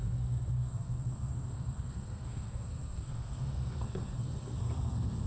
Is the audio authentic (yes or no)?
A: no